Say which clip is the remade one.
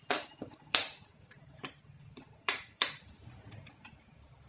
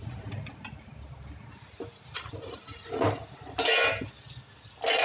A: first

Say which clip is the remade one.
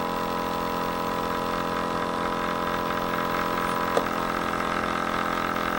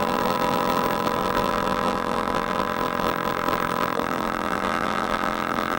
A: second